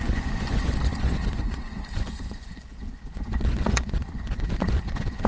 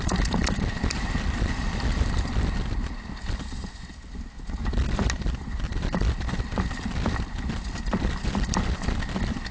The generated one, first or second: first